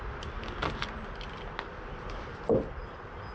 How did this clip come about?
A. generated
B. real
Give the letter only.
B